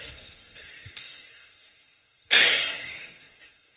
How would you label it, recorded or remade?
remade